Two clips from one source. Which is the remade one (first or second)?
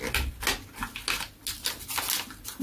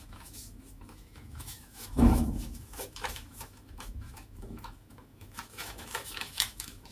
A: second